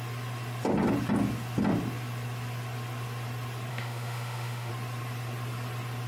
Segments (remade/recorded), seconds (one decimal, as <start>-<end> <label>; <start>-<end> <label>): 0.0-3.7 recorded; 3.7-4.7 remade; 4.7-6.1 recorded